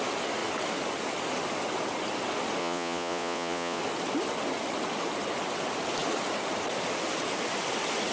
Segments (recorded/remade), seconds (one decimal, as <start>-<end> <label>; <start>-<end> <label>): 0.0-2.6 recorded; 2.6-3.8 remade; 3.8-8.1 recorded